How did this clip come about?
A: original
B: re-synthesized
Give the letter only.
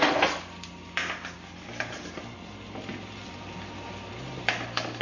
A